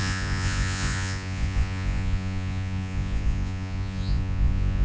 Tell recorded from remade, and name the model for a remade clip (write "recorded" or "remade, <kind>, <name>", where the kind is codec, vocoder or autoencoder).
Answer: remade, vocoder, Vocos